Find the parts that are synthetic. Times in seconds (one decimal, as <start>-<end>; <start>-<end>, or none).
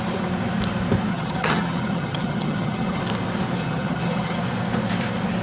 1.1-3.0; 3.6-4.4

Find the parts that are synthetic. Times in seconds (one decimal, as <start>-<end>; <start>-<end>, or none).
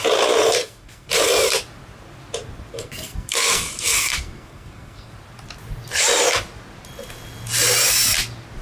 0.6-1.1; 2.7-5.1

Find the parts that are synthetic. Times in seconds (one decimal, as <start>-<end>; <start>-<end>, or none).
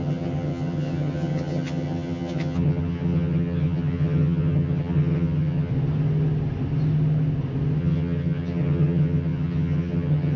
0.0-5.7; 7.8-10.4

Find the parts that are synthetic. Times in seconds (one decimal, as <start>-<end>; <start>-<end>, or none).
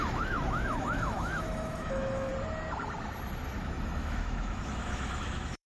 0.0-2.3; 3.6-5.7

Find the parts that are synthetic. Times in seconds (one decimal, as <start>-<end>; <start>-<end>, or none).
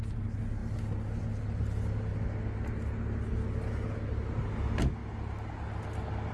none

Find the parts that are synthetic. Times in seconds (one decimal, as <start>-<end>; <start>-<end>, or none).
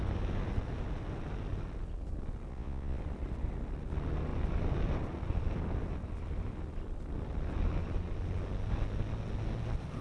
2.5-3.0